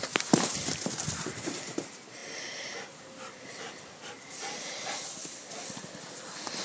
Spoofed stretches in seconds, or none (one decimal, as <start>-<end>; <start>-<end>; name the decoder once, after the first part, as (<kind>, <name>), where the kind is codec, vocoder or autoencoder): none